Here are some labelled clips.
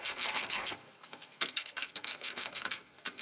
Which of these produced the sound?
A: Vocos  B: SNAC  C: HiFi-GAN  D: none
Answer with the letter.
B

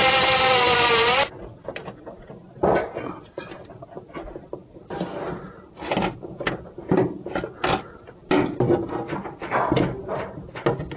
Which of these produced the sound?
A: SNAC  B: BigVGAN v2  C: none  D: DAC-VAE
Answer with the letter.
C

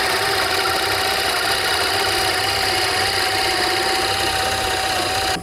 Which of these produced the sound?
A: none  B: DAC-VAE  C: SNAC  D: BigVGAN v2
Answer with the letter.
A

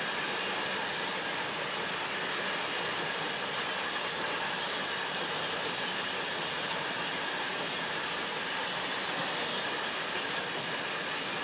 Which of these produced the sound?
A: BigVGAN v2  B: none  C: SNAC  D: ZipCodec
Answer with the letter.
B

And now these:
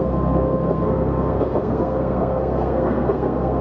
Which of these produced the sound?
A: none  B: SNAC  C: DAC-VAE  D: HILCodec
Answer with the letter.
B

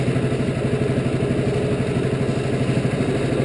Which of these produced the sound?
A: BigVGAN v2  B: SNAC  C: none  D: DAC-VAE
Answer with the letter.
C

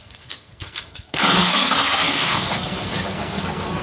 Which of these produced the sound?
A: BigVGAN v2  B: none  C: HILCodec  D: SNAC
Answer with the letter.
D